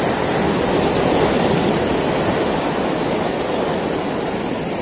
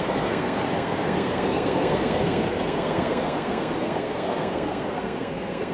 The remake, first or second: second